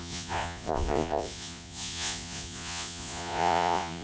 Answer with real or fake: fake